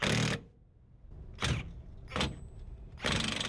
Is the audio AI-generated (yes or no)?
no